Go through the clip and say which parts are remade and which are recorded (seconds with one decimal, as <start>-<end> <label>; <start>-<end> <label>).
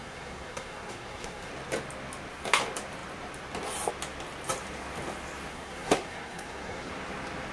0.0-1.5 remade; 1.5-5.5 recorded; 5.5-6.9 remade; 6.9-7.5 recorded